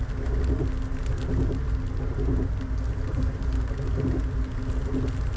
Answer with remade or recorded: recorded